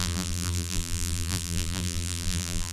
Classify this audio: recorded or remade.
remade